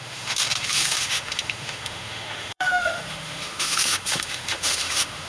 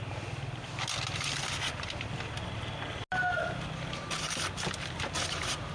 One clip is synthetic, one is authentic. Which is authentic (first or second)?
second